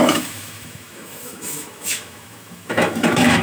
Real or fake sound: fake